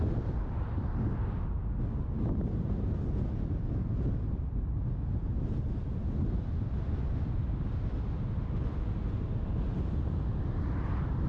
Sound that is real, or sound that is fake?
real